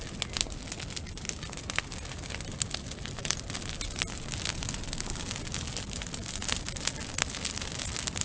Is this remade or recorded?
recorded